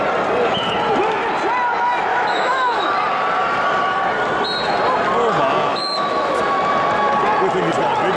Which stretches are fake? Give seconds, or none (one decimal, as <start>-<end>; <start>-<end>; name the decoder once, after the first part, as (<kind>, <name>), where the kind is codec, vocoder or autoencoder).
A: 2.1-2.9 (autoencoder, DAC-VAE); 5.7-6.4